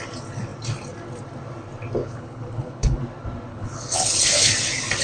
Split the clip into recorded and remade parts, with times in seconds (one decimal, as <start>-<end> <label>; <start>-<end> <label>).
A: 0.0-2.0 recorded; 2.0-3.0 remade; 3.0-3.5 recorded; 3.5-4.5 remade; 4.5-5.0 recorded